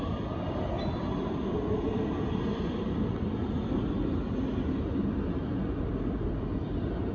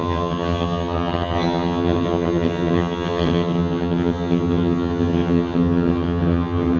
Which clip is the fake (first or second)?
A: second